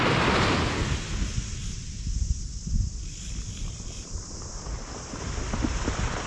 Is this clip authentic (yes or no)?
yes